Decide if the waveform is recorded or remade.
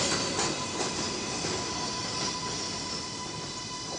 recorded